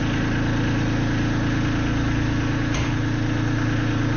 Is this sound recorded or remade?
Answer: recorded